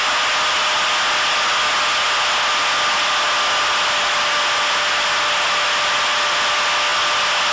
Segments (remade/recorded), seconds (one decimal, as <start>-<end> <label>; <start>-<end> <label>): 0.0-7.5 recorded